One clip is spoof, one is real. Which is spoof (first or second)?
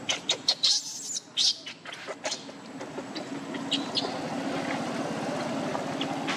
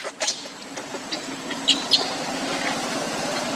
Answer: second